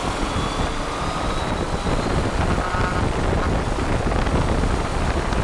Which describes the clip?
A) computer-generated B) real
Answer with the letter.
B